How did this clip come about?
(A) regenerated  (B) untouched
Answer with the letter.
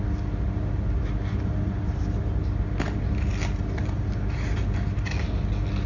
B